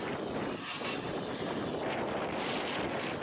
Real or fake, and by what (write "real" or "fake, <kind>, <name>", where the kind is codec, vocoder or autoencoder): real